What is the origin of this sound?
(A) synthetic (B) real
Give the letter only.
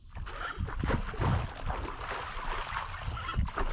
B